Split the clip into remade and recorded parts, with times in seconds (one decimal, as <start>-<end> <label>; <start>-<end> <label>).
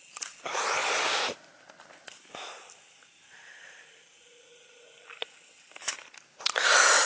0.0-0.8 recorded; 0.8-3.3 remade; 3.3-7.1 recorded